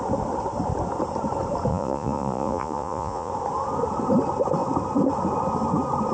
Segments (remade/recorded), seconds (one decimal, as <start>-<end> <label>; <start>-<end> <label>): 0.0-1.7 recorded; 1.7-3.3 remade; 3.3-6.1 recorded